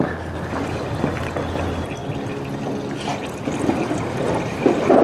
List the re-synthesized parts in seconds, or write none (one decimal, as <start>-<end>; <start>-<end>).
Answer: none